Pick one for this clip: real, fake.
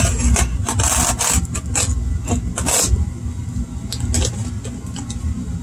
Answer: real